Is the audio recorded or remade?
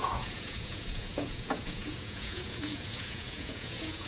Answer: remade